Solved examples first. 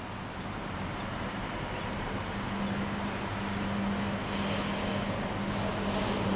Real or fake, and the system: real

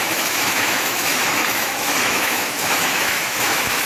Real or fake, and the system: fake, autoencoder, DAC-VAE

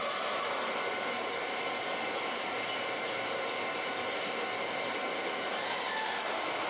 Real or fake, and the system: real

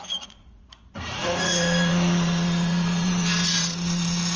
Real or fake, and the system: fake, vocoder, Vocos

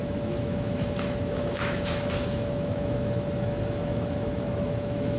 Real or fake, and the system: fake, autoencoder, DAC-VAE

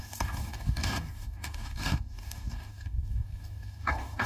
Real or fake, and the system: fake, codec, DAC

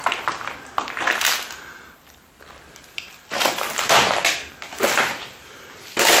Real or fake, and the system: fake, vocoder, BigVGAN v2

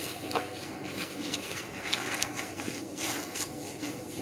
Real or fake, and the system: fake, codec, SNAC